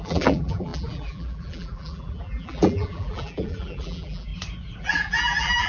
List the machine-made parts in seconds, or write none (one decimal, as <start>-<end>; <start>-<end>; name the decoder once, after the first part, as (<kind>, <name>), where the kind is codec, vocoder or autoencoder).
0.0-4.3 (vocoder, BigVGAN v2); 4.8-5.7